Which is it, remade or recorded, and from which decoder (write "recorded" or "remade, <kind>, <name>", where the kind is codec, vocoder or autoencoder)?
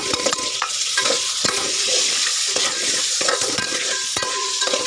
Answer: remade, vocoder, Vocos